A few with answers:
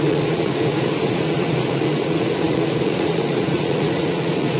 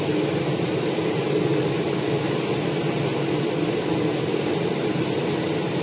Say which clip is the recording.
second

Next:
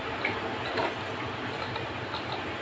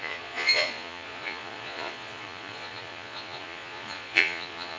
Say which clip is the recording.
first